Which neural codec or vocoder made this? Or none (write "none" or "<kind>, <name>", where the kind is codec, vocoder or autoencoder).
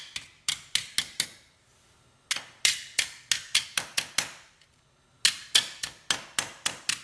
none